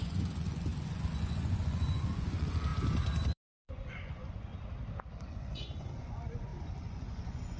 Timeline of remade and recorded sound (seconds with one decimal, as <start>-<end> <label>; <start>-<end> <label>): 0.0-2.7 remade; 2.7-3.3 recorded; 3.3-4.5 remade; 4.5-5.3 recorded; 5.3-7.6 remade